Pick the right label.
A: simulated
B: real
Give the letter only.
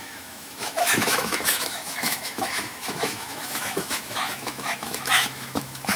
A